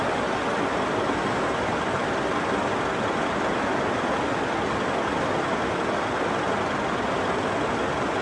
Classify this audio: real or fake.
real